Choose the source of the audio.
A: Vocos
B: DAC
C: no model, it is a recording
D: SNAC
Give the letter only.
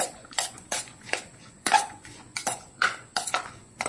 A